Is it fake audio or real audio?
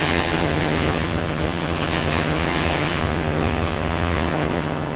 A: fake